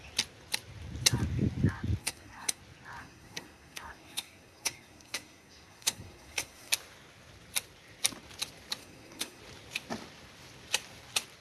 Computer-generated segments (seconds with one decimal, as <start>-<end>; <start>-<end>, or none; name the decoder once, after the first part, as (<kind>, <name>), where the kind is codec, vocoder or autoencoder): 2.0-2.6 (codec, SNAC); 3.0-6.7; 8.8-9.4